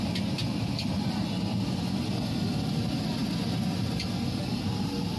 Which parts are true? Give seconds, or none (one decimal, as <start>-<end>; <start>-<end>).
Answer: 0.0-5.2